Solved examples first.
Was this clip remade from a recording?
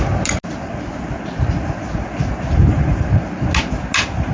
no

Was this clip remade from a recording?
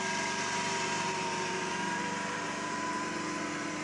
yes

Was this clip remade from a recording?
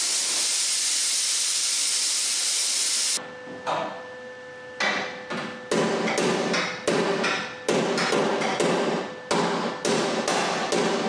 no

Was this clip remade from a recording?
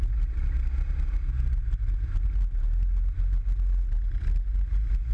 no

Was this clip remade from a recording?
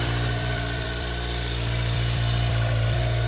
yes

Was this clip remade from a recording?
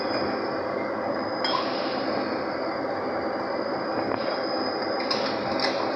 no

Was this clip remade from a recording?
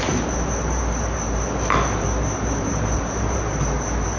yes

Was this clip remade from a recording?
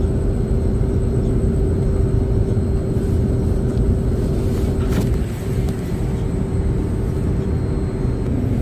no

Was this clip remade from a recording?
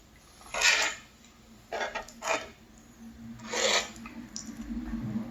no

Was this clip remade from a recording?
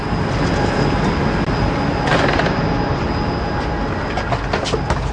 no